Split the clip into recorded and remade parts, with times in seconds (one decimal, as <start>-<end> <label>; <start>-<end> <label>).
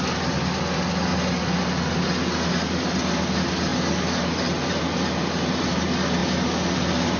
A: 0.0-7.2 recorded